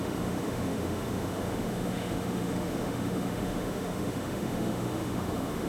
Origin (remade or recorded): remade